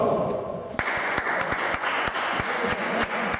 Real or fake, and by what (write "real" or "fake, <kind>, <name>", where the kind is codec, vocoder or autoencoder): fake, vocoder, Vocos